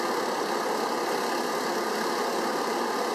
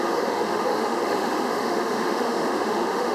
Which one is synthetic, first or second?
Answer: second